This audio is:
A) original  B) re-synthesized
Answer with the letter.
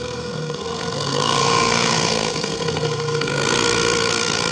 B